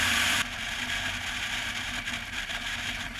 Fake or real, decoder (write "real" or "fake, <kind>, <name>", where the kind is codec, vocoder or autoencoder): real